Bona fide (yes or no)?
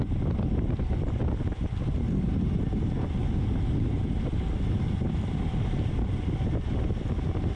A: yes